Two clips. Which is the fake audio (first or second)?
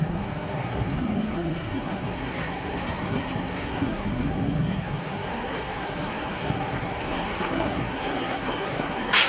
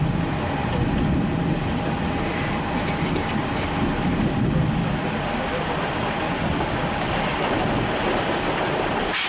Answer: first